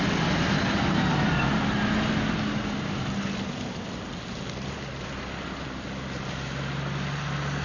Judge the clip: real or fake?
real